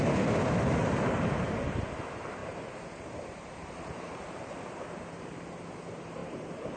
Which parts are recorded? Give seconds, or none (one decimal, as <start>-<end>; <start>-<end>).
0.0-0.8; 1.3-2.4; 5.4-6.2